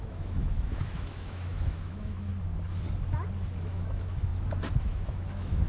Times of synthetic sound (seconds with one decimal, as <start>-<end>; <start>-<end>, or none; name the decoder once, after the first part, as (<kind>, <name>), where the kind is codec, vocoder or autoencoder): 0.0-2.3 (autoencoder, DAC-VAE); 3.6-4.3; 4.8-5.7